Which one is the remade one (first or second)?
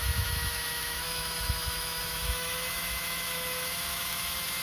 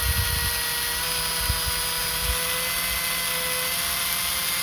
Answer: first